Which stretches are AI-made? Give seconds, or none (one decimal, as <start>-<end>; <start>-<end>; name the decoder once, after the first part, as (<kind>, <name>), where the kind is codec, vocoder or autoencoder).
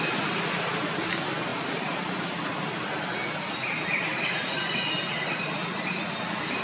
1.5-2.4 (vocoder, BigVGAN v2)